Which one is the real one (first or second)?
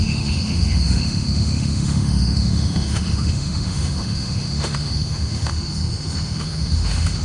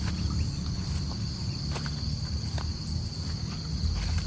second